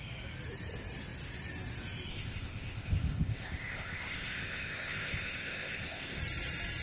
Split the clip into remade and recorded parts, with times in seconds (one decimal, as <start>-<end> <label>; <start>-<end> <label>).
0.0-2.1 recorded; 2.1-6.2 remade; 6.2-6.8 recorded